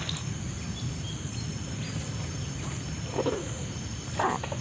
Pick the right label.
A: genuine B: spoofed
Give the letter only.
B